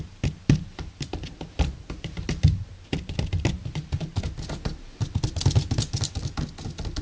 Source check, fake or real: real